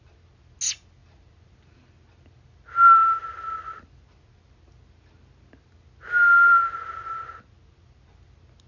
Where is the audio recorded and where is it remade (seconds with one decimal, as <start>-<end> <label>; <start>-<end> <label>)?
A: 0.0-8.7 recorded